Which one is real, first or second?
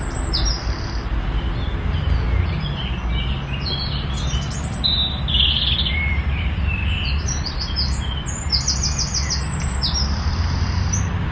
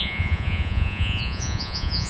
first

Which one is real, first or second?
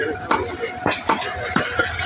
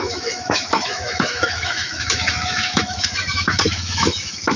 first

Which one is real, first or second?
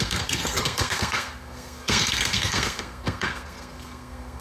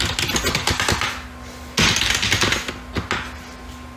second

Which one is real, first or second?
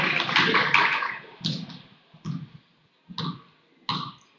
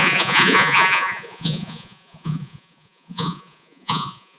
first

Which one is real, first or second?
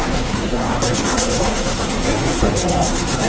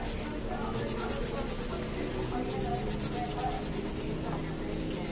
second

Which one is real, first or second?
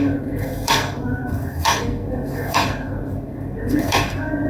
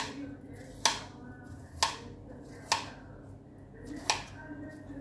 second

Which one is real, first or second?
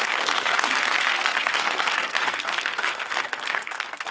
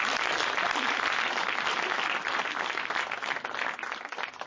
second